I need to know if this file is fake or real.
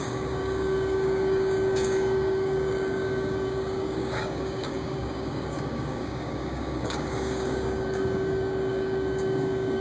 fake